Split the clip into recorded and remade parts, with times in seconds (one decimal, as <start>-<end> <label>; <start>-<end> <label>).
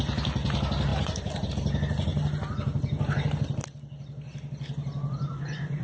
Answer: 0.0-0.9 recorded; 0.9-1.5 remade; 1.5-5.8 recorded